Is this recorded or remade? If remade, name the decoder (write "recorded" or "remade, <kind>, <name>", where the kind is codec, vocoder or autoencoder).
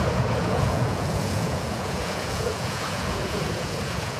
remade, vocoder, Vocos